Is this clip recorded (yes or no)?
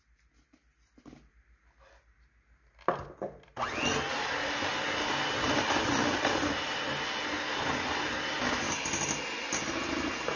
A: yes